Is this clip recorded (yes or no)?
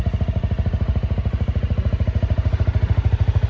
yes